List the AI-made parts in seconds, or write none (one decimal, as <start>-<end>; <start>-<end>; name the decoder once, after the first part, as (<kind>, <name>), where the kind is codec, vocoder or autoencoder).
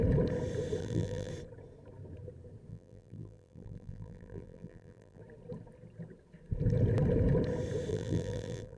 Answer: 0.8-1.3 (vocoder, BigVGAN v2); 2.7-5.2; 7.9-8.8